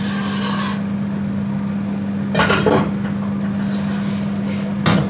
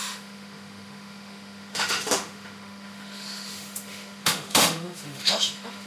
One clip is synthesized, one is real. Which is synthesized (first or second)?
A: second